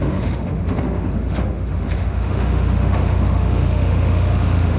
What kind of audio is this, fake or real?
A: fake